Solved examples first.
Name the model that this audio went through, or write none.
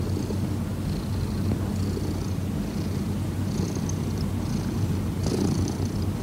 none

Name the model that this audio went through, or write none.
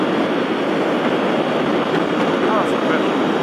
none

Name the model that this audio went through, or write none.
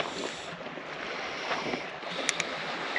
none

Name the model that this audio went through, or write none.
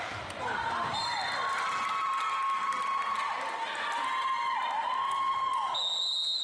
none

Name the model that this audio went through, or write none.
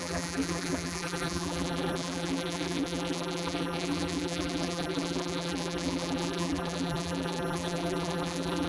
vocoder, BigVGAN v2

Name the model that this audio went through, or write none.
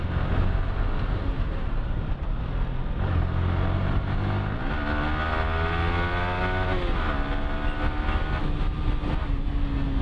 none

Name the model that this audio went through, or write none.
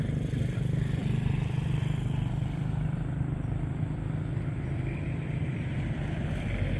vocoder, BigVGAN v2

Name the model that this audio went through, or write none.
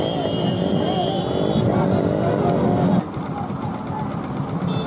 none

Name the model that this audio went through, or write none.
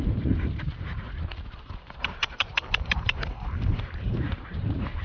vocoder, BigVGAN v2